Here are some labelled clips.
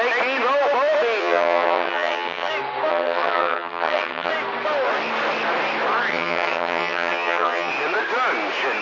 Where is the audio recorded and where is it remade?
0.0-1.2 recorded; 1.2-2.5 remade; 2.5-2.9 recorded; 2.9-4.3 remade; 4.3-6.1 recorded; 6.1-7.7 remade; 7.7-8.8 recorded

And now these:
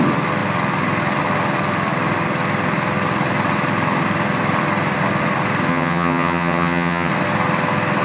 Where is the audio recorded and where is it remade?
0.0-5.7 recorded; 5.7-7.1 remade; 7.1-8.0 recorded

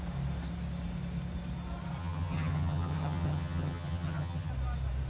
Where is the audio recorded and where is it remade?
0.0-2.0 recorded; 2.0-4.5 remade; 4.5-5.1 recorded

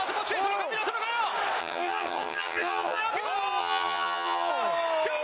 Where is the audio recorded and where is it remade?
0.0-1.6 recorded; 1.6-3.0 remade; 3.0-3.6 recorded; 3.6-4.5 remade; 4.5-5.2 recorded

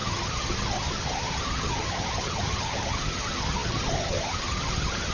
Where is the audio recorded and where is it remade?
0.0-5.1 remade

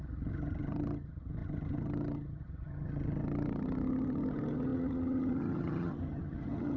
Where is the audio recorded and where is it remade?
0.0-6.8 remade

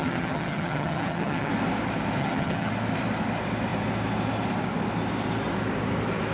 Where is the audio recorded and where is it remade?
0.0-1.5 remade; 1.5-2.2 recorded; 2.2-2.7 remade; 2.7-6.3 recorded